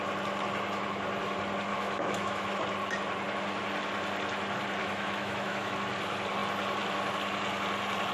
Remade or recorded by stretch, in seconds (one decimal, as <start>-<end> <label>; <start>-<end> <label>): 0.0-1.7 recorded; 1.7-2.6 remade; 2.6-4.8 recorded; 4.8-5.7 remade; 5.7-8.1 recorded